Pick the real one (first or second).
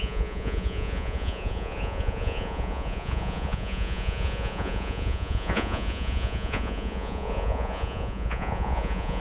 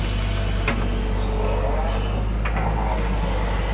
second